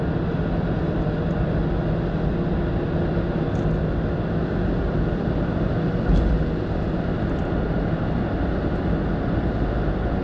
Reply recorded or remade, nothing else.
recorded